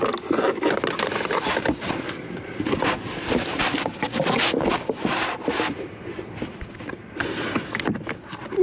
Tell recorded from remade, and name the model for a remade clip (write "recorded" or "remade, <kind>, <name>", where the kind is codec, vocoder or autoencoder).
recorded